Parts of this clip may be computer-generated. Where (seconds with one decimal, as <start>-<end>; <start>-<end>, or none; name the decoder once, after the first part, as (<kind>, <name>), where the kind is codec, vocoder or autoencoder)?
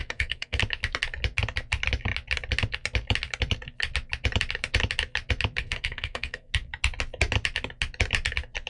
0.0-0.6 (codec, SNAC); 5.6-6.5